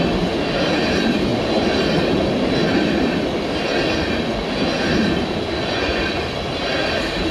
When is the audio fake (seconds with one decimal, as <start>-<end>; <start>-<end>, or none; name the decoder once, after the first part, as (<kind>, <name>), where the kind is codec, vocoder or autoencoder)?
5.6-6.2 (vocoder, Vocos)